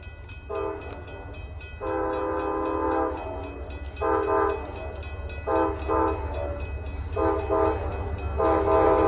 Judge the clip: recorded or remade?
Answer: recorded